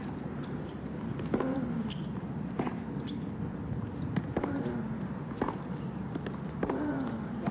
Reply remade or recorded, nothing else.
recorded